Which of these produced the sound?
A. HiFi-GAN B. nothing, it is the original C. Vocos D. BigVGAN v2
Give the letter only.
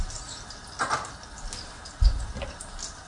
B